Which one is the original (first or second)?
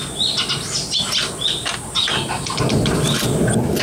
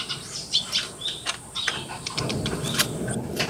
first